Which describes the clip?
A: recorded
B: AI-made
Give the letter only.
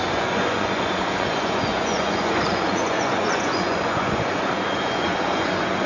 B